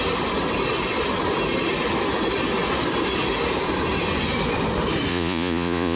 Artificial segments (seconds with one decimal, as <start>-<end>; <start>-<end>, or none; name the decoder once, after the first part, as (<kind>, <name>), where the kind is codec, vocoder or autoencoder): 5.1-6.0 (vocoder, Vocos)

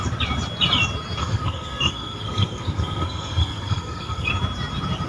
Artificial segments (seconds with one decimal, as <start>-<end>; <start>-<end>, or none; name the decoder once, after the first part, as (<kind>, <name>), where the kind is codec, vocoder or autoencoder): 1.2-4.3 (codec, SNAC)

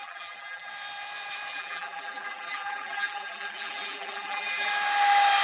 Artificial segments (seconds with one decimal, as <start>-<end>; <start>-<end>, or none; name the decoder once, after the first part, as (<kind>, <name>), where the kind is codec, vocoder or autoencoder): 0.0-0.7 (vocoder, BigVGAN v2); 1.5-4.7

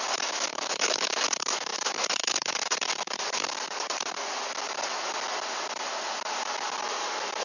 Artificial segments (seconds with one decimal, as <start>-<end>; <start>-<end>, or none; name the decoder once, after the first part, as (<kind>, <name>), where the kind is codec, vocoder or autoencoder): 0.5-1.2 (autoencoder, DAC-VAE)

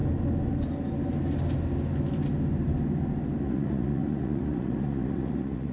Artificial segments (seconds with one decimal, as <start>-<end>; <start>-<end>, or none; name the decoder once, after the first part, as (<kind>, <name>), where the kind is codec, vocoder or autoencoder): 3.4-5.7 (vocoder, Vocos)

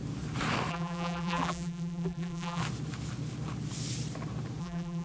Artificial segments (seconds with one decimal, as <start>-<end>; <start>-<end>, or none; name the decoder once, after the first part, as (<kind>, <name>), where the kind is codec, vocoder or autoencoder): 0.7-2.6 (vocoder, BigVGAN v2); 4.6-5.0